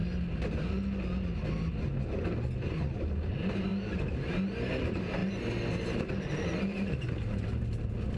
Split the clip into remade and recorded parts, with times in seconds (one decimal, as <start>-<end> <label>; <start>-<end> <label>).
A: 0.0-8.2 recorded